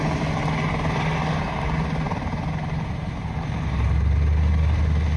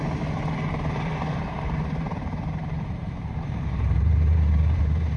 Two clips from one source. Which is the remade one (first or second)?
second